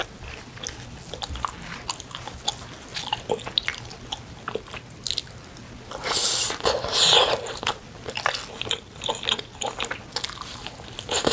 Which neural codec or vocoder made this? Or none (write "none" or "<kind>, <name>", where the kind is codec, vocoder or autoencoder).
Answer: none